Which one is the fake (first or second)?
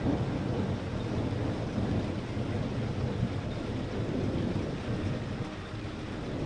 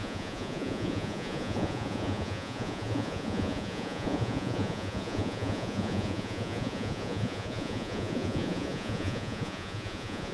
second